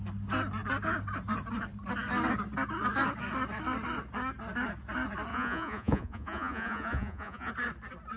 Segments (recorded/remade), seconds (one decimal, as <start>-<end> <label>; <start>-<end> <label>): 0.0-5.3 recorded; 5.3-7.5 remade; 7.5-8.2 recorded